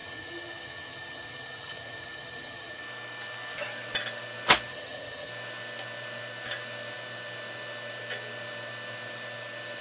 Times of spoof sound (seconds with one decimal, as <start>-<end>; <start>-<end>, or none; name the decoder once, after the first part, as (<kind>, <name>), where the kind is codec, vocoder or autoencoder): 0.0-2.8 (vocoder, HiFi-GAN); 4.7-5.3